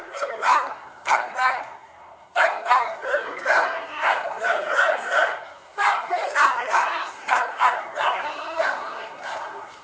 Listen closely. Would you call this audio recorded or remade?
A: remade